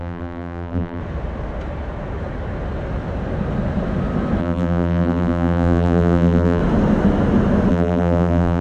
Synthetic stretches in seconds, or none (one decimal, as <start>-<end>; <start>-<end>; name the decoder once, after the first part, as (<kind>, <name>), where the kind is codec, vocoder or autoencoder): 0.0-1.0 (vocoder, BigVGAN v2); 4.4-6.6; 7.7-8.6